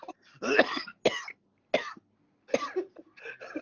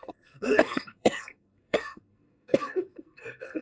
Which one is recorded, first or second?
first